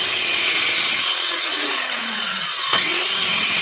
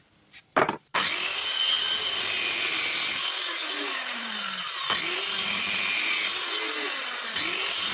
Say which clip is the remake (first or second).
first